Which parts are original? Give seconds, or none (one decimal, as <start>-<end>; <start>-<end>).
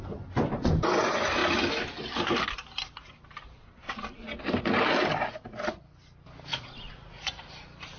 0.0-6.5; 7.5-8.0